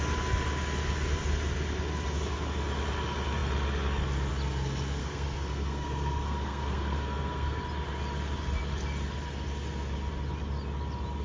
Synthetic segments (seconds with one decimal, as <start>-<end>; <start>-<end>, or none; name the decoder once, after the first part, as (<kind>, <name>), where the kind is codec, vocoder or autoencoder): 5.0-7.6 (codec, SNAC)